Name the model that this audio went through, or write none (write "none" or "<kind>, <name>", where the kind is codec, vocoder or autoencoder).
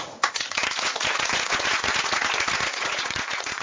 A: vocoder, Vocos